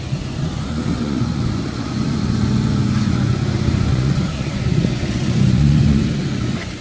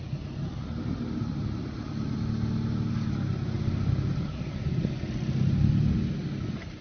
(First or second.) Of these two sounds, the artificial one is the first